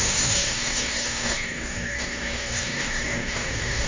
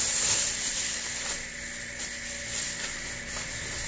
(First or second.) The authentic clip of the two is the second